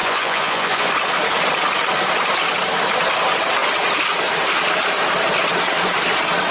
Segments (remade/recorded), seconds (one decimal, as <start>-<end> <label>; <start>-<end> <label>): 0.0-0.9 remade; 0.9-6.5 recorded